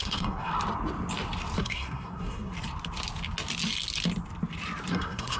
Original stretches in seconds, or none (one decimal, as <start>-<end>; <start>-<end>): 0.5-1.6; 2.5-4.9